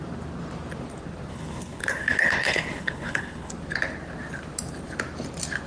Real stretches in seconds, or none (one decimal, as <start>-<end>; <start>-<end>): 0.0-1.3; 3.5-5.7